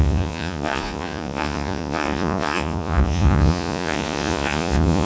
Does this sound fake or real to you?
fake